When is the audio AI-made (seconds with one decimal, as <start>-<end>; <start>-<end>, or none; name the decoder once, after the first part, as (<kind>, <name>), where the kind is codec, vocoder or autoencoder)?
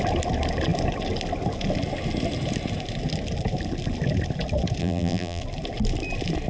4.8-5.4 (vocoder, BigVGAN v2)